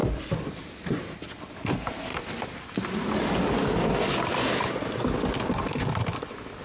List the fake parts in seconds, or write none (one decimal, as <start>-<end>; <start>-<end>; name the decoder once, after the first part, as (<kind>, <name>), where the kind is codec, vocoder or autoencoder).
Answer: 0.0-1.4 (vocoder, BigVGAN v2)